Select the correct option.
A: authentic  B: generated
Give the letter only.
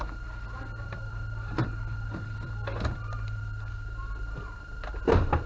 B